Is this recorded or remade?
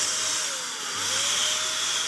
recorded